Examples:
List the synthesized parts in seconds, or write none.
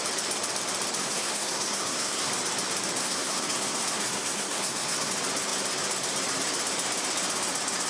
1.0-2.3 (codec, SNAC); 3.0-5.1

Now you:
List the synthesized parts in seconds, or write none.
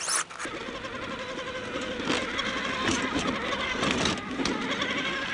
none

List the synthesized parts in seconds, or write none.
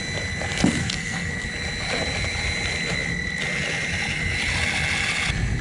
0.8-1.3 (codec, SNAC)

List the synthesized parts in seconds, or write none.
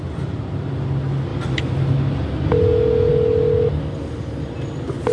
none